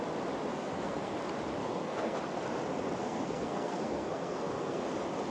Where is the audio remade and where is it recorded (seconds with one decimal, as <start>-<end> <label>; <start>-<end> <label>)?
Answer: 0.0-0.5 recorded; 0.5-1.1 remade; 1.1-1.6 recorded; 1.6-2.2 remade; 2.2-3.0 recorded; 3.0-4.8 remade; 4.8-5.3 recorded